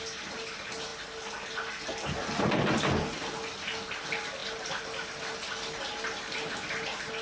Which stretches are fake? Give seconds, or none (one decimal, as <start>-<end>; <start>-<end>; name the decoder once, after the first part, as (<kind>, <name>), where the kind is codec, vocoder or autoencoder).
none